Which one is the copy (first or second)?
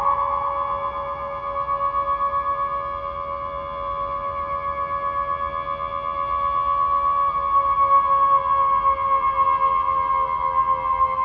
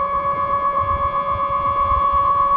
second